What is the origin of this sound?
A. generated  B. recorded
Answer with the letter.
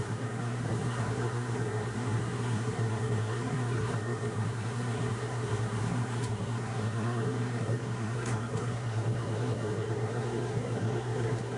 A